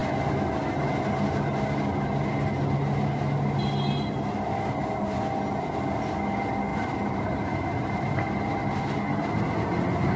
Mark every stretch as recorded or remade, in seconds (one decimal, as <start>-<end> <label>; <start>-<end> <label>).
0.0-6.7 recorded; 6.7-8.4 remade; 8.4-10.2 recorded